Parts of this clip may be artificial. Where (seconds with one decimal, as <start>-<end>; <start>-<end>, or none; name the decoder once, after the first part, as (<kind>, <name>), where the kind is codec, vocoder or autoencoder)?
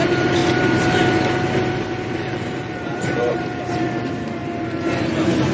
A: 0.0-0.4 (vocoder, BigVGAN v2); 2.1-5.5